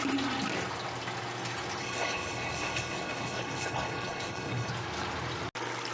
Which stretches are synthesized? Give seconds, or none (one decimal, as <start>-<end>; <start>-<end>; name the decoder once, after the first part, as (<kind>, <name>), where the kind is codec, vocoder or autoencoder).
1.8-4.7 (codec, HILCodec)